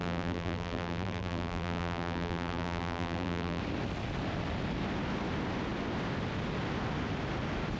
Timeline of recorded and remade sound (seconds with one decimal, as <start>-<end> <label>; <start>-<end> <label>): 0.0-3.6 remade; 3.6-7.8 recorded